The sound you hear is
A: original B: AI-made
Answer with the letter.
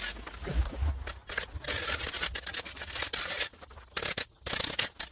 A